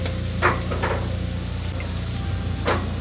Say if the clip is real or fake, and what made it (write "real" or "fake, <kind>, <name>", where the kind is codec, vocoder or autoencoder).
real